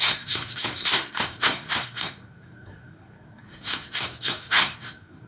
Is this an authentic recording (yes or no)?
no